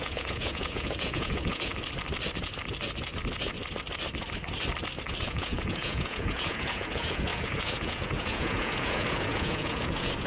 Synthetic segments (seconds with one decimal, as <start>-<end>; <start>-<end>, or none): 0.0-1.7; 5.2-10.3